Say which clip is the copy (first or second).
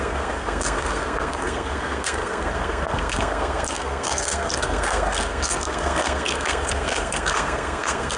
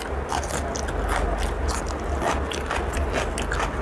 first